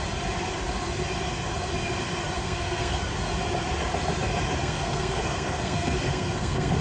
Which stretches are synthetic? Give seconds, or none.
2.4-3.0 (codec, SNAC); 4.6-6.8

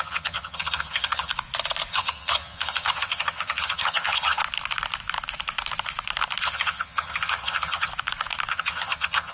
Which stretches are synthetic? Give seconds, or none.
0.0-1.3 (vocoder, HiFi-GAN); 1.9-4.4; 6.4-7.9; 8.5-9.3

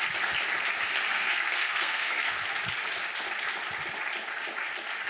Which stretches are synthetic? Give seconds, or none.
1.1-2.3 (codec, SNAC)

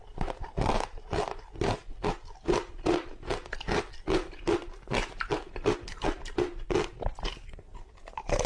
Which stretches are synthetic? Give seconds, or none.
none

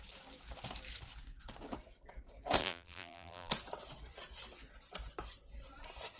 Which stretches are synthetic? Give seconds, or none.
2.6-3.5 (vocoder, BigVGAN v2)

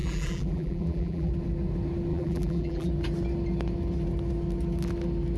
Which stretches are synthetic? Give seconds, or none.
0.0-1.3 (vocoder, BigVGAN v2); 2.1-2.9